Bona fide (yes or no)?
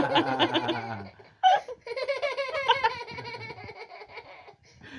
yes